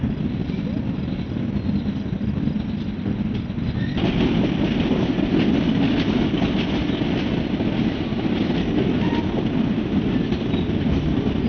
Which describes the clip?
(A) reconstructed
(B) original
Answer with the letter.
B